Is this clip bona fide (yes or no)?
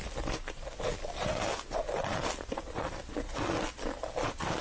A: yes